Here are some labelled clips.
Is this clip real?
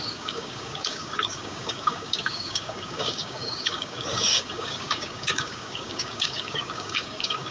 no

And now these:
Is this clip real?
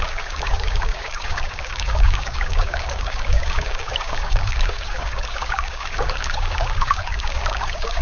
no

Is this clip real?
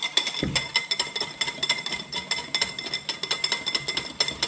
yes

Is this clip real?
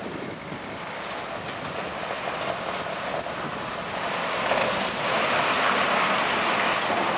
yes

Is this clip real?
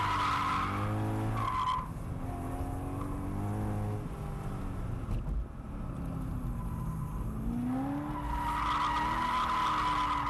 yes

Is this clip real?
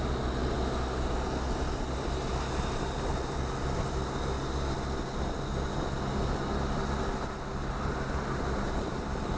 yes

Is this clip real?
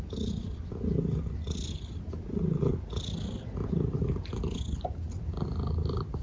yes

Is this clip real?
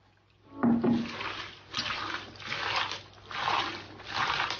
yes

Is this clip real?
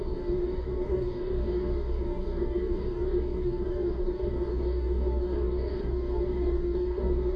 no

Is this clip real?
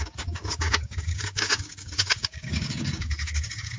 no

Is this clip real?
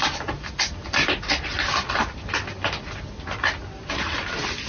yes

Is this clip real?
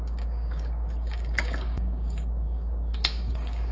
no